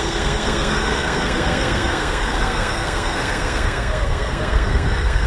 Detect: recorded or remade remade